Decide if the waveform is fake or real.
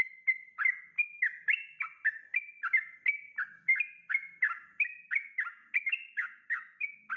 real